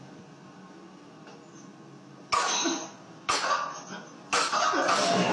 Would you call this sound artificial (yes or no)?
no